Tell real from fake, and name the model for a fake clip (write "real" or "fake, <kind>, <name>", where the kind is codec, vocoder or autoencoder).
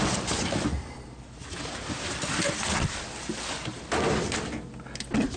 real